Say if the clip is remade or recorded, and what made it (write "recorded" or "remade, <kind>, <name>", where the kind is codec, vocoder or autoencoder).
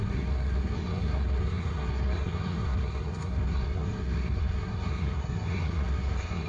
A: remade, codec, SNAC